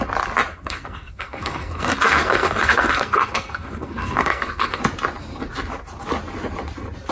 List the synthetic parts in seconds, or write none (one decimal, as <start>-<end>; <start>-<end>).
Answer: 0.5-4.8